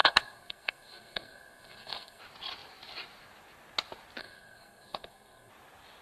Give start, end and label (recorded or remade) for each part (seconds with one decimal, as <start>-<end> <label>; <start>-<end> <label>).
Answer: 0.0-2.2 remade; 2.2-4.2 recorded; 4.2-5.5 remade; 5.5-6.0 recorded